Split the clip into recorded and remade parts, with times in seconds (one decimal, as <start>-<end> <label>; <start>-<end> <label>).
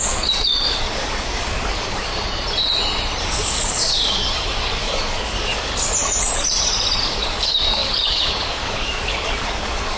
0.0-2.1 remade; 2.1-3.2 recorded; 3.2-5.7 remade; 5.7-7.0 recorded; 7.0-10.0 remade